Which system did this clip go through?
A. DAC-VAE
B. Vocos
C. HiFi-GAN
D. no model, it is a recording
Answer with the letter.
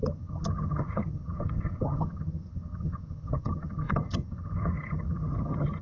C